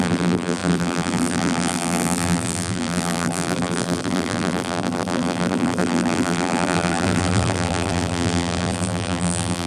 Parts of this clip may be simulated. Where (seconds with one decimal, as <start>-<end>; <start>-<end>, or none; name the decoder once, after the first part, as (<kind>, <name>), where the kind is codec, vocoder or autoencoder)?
0.0-9.7 (vocoder, BigVGAN v2)